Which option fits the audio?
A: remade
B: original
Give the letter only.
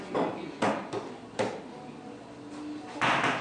B